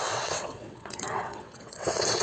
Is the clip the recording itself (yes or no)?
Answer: no